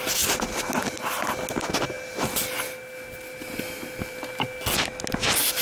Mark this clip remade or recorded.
recorded